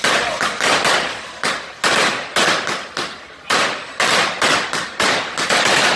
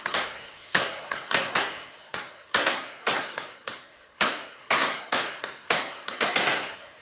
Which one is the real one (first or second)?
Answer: first